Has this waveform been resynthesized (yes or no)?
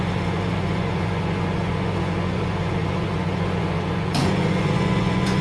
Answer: yes